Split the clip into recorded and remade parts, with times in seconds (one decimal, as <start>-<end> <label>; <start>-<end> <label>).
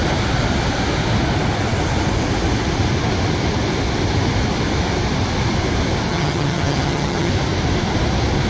0.0-6.1 recorded; 6.1-7.3 remade; 7.3-8.5 recorded